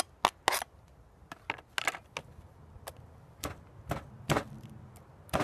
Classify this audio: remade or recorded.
recorded